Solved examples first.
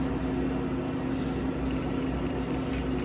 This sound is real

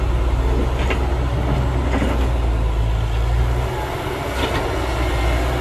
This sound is real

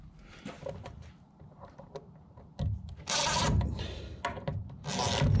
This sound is real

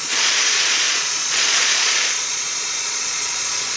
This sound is fake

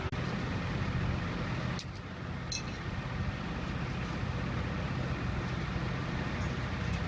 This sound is real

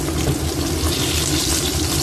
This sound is real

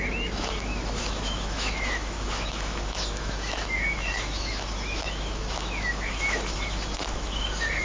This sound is fake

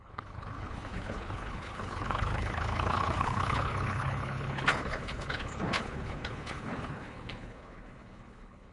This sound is fake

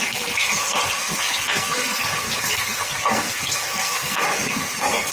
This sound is fake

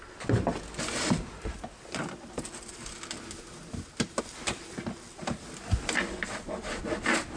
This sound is real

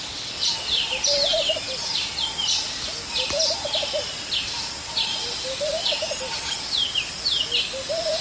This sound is real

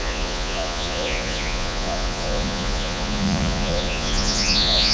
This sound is fake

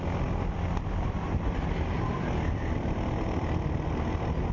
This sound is real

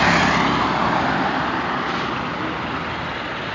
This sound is real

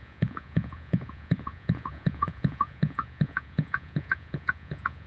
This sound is fake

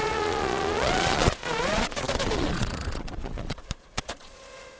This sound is fake